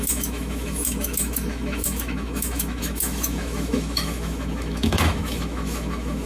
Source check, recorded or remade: remade